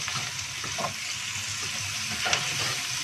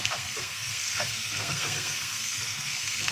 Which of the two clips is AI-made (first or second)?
second